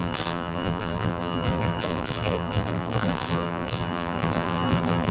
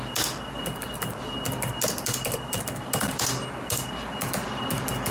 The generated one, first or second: first